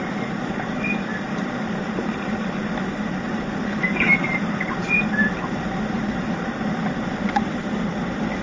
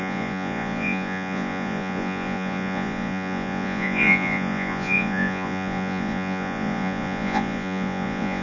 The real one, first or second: first